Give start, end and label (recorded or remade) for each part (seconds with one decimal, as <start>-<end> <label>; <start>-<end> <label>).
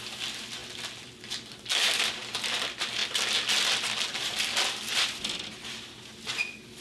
0.0-6.8 recorded